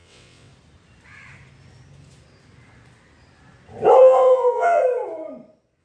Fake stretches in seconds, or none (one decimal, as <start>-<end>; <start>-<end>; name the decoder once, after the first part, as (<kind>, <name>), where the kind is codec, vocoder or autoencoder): 0.0-0.5 (vocoder, WaveNeXt); 4.0-4.8